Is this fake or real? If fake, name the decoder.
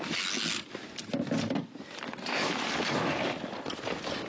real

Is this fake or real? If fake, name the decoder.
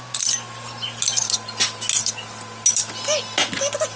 real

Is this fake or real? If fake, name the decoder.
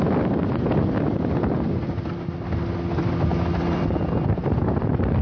real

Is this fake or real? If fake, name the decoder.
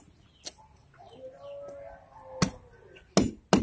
real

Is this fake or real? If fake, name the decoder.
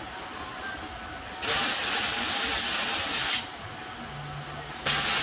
real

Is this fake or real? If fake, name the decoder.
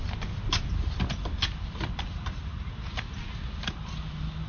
real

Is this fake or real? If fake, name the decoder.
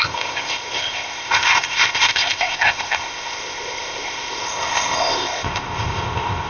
fake, codec, ZipCodec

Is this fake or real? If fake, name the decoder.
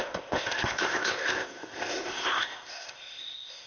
fake, codec, ZipCodec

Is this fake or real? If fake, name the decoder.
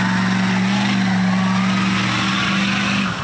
real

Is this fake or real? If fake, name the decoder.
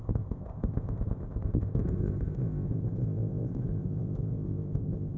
fake, codec, ZipCodec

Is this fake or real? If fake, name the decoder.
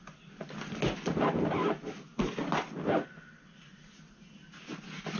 real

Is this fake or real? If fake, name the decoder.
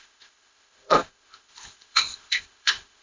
fake, codec, ZipCodec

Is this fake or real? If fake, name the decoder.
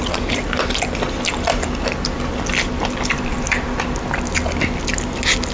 real